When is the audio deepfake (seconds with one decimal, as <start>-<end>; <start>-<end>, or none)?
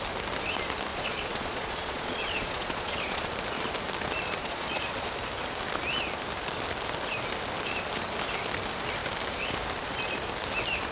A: 0.9-3.3; 4.4-5.1